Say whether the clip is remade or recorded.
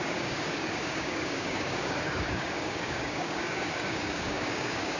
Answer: remade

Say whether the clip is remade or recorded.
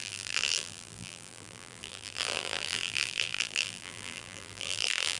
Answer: remade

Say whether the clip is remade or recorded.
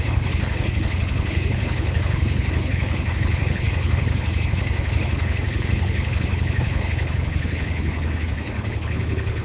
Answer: remade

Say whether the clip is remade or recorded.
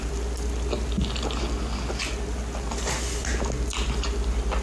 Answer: recorded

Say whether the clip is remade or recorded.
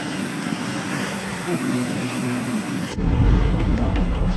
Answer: remade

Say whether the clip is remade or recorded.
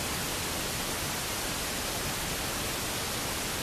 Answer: recorded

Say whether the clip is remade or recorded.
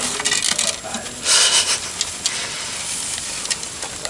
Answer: recorded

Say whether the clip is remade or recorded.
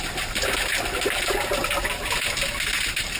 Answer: recorded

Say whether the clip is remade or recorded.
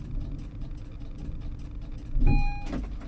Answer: recorded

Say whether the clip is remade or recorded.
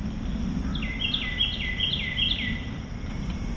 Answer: recorded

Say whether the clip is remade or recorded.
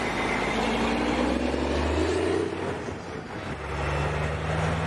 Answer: recorded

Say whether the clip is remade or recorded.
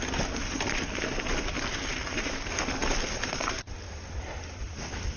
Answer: recorded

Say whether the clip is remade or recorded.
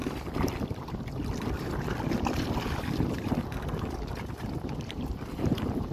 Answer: recorded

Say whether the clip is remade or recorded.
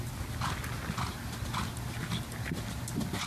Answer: recorded